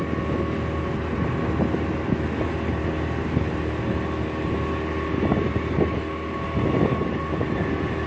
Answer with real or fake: real